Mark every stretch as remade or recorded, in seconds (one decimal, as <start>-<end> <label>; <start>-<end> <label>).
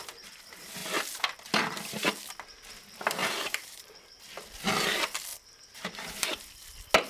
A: 0.0-3.2 recorded; 3.2-4.2 remade; 4.2-7.1 recorded